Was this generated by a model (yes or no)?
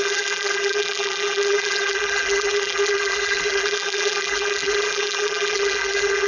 yes